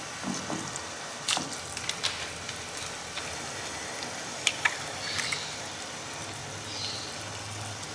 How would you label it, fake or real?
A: real